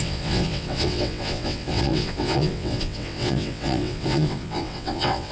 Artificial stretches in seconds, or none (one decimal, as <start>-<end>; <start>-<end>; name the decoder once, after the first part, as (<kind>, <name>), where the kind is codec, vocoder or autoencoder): 0.0-5.3 (vocoder, WaveNeXt)